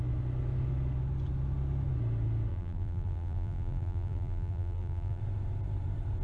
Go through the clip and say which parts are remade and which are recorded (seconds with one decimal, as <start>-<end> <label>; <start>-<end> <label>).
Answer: 0.0-2.5 recorded; 2.5-5.2 remade; 5.2-6.2 recorded